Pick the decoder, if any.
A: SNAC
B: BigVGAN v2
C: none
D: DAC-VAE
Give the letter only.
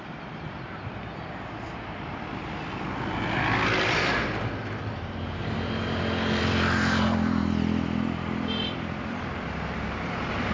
B